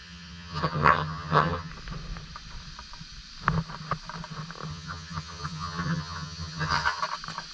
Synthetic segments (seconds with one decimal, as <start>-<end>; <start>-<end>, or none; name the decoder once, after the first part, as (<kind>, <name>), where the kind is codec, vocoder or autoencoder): 0.0-1.7 (vocoder, HiFi-GAN); 4.7-7.0